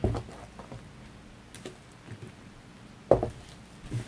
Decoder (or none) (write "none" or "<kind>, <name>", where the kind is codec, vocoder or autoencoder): none